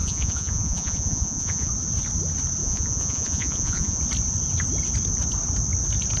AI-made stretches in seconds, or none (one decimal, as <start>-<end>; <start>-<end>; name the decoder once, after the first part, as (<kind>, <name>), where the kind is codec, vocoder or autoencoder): 0.0-1.7 (vocoder, Vocos); 2.6-4.0

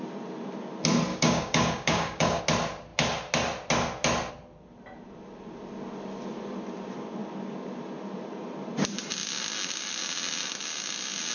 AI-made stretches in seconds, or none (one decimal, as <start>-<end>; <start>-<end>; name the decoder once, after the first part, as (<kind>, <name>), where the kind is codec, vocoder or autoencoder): 1.1-2.4 (codec, DAC)

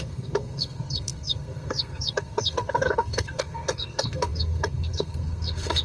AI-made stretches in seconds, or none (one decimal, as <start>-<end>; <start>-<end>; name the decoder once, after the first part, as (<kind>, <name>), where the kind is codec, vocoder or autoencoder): 0.0-5.8 (codec, SNAC)

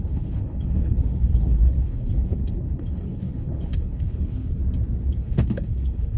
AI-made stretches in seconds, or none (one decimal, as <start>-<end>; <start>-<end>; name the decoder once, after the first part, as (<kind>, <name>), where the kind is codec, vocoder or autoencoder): 0.0-4.6 (codec, HILCodec); 5.2-6.2

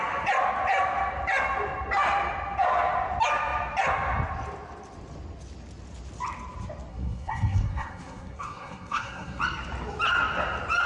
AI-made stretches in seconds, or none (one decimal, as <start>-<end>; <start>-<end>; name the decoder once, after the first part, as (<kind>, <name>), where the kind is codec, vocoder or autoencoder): 6.9-9.4 (codec, SNAC)